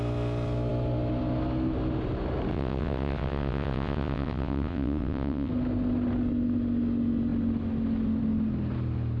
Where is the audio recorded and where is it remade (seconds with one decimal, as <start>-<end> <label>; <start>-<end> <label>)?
0.0-2.5 recorded; 2.5-5.5 remade; 5.5-9.2 recorded